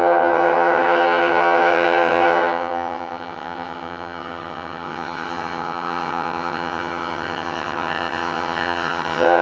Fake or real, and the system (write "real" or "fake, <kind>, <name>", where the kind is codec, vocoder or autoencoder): fake, vocoder, HiFi-GAN